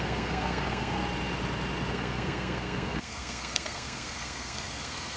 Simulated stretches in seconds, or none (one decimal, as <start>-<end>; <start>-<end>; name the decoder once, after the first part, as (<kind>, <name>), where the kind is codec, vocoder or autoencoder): 0.0-1.0 (codec, SNAC); 1.9-5.2